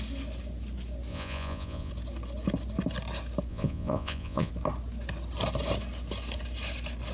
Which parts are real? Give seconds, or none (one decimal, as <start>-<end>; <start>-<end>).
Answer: 0.0-1.1; 1.9-3.5; 4.5-7.1